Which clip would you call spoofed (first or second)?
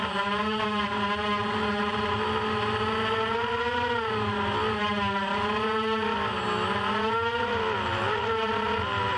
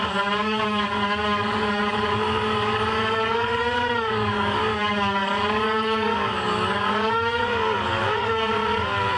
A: second